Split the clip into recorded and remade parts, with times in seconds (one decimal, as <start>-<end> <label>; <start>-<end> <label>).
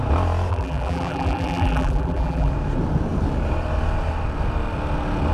0.0-0.5 recorded; 0.5-2.5 remade; 2.5-5.3 recorded